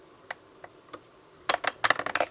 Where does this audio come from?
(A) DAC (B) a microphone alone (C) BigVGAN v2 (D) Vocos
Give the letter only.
B